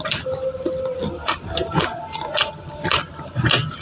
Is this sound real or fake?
real